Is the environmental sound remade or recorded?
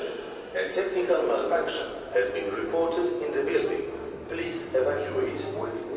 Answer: recorded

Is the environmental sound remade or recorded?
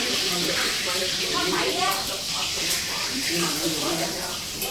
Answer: remade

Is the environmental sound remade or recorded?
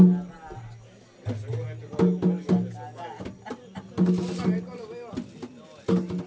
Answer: recorded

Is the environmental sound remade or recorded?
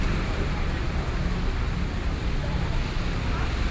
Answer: recorded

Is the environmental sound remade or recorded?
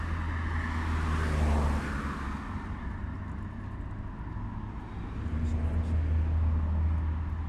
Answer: recorded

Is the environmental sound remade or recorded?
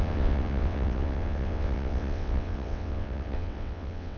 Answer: remade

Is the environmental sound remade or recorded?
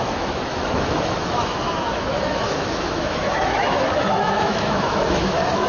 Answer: remade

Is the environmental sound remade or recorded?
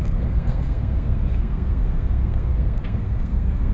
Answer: remade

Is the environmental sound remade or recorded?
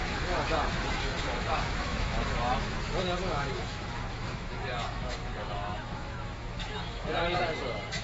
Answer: remade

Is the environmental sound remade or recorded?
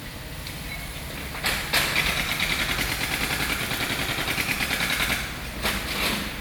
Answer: recorded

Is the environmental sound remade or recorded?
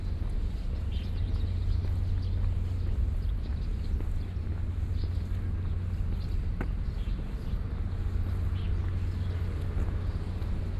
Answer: recorded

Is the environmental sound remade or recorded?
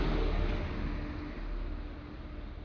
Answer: recorded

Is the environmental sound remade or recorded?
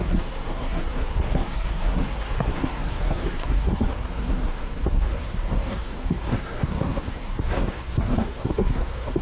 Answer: remade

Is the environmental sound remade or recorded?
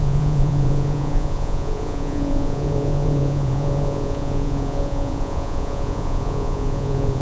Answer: remade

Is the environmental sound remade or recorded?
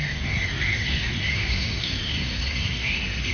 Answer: remade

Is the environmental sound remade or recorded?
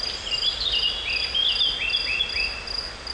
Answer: recorded